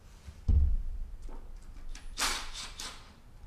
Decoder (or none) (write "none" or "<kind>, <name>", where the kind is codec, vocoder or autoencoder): vocoder, BigVGAN v2